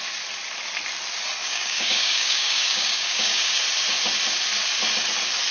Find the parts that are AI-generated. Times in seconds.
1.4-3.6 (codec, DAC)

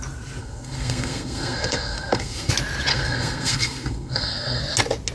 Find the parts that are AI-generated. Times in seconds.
0.4-2.5 (codec, SNAC); 2.9-4.6

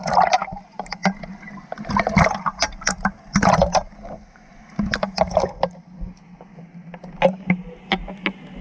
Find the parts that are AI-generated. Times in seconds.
none